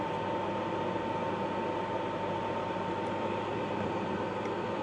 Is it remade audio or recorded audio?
recorded